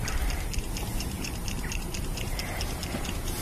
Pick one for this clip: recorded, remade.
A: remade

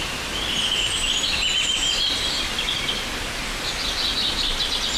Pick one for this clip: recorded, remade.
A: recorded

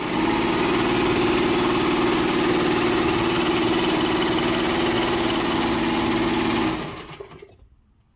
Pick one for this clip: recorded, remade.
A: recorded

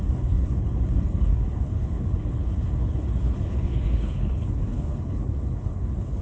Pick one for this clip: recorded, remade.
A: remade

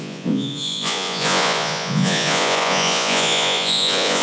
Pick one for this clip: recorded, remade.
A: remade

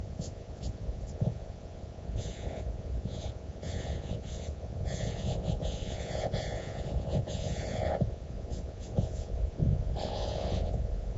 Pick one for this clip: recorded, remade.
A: remade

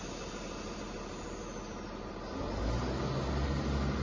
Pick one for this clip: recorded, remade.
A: recorded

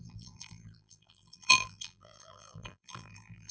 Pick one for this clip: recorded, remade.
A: remade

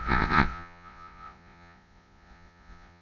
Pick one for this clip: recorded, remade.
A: remade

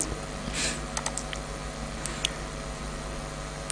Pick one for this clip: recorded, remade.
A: recorded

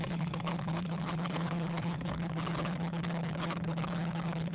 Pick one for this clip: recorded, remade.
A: remade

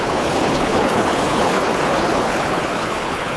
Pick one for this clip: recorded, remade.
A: remade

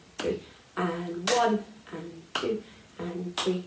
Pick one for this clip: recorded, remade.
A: recorded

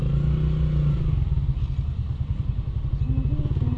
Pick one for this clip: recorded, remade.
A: recorded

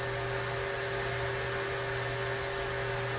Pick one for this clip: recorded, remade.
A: recorded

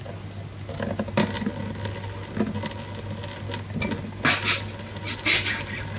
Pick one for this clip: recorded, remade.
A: recorded